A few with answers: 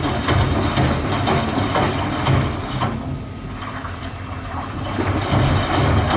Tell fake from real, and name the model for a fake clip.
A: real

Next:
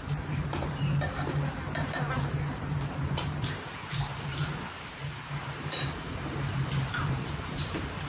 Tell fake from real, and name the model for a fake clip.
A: fake, vocoder, BigVGAN v2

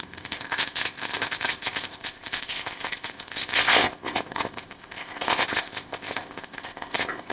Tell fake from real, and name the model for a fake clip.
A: fake, codec, ZipCodec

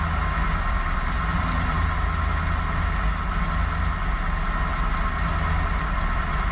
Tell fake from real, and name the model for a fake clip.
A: real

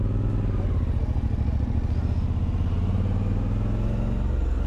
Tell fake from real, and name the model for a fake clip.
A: real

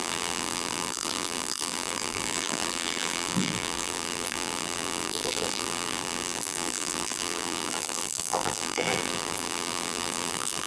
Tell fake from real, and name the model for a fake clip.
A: fake, vocoder, BigVGAN v2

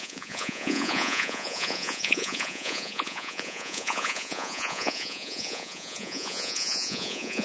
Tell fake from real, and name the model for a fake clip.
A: fake, vocoder, Vocos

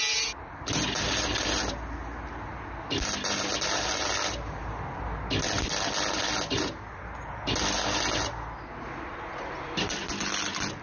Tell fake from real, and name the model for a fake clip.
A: real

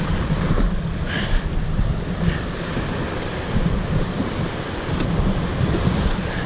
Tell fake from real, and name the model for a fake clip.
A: fake, vocoder, BigVGAN v2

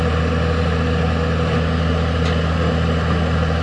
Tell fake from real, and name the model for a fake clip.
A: real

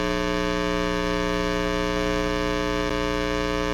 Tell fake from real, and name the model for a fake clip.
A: real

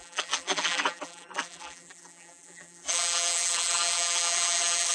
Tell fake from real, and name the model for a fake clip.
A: fake, vocoder, BigVGAN v2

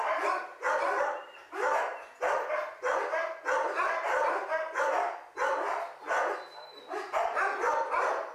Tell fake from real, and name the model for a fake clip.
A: real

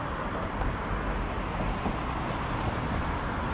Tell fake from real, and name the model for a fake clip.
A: real